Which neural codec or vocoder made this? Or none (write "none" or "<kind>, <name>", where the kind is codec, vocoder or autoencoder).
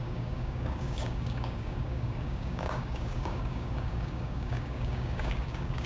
codec, DAC